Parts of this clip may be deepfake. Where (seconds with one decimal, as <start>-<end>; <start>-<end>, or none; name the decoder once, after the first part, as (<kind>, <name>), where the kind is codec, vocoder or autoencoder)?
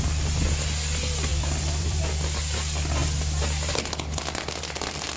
1.3-2.0 (vocoder, BigVGAN v2)